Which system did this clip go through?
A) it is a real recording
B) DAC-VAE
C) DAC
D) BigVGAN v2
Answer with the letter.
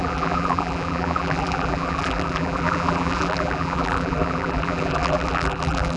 D